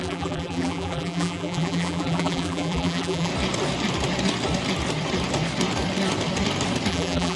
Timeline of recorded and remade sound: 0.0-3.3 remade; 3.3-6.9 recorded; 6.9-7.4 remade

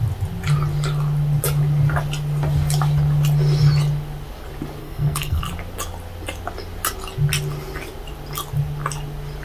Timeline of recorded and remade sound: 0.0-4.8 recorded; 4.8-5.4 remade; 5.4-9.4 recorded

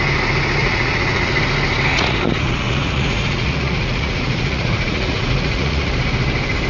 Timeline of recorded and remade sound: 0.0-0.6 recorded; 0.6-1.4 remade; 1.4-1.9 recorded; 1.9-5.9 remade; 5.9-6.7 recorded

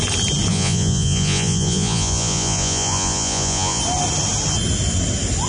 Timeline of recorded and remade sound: 0.0-0.5 recorded; 0.5-3.8 remade; 3.8-5.5 recorded

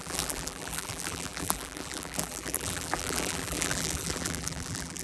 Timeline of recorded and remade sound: 0.0-5.0 remade